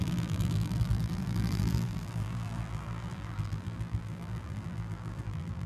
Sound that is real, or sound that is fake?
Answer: fake